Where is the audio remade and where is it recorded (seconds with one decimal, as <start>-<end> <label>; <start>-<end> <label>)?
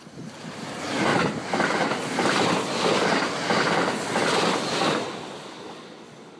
0.0-6.4 recorded